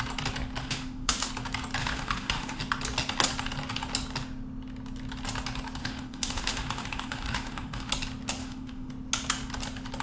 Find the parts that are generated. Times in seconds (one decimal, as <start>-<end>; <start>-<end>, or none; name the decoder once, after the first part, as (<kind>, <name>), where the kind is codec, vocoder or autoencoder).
0.6-1.3 (autoencoder, DAC-VAE); 1.8-2.6; 5.8-7.9; 8.4-8.9